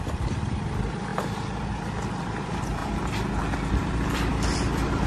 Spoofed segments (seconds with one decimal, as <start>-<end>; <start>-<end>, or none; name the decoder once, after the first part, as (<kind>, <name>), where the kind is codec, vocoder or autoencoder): 0.0-2.8 (vocoder, BigVGAN v2); 3.7-5.1